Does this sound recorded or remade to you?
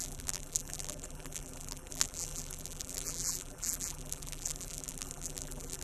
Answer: remade